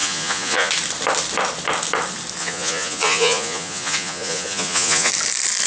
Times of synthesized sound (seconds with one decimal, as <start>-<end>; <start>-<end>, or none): 0.0-0.7; 2.4-5.1